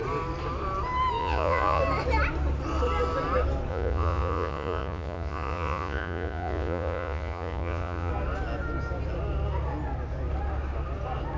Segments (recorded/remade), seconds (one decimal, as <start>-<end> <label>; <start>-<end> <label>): 0.0-1.2 recorded; 1.2-1.8 remade; 1.8-3.7 recorded; 3.7-8.1 remade; 8.1-11.4 recorded